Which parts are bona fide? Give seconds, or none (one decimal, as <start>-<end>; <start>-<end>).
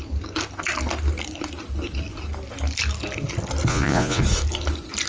0.0-3.7; 4.2-5.1